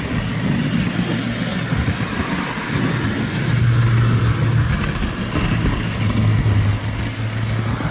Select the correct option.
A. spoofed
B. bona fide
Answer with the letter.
B